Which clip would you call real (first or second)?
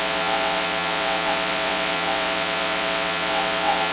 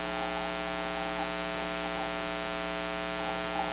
second